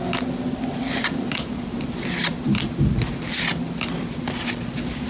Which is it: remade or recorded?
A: recorded